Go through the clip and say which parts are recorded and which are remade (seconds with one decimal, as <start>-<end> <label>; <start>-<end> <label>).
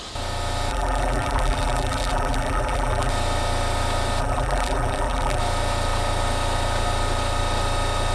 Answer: 0.0-0.7 recorded; 0.7-3.1 remade; 3.1-4.2 recorded; 4.2-5.4 remade; 5.4-8.1 recorded